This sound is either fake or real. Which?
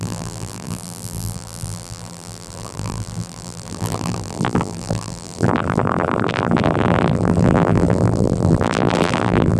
fake